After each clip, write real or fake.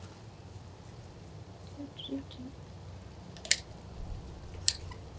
real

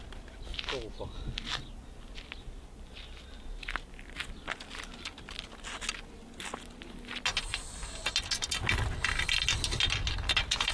real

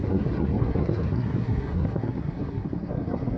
fake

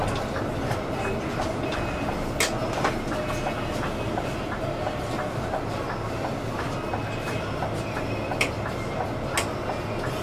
real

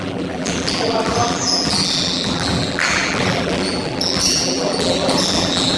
fake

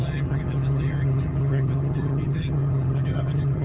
fake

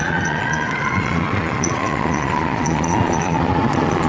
fake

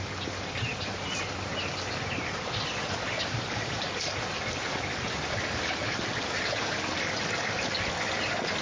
real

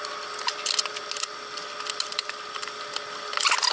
real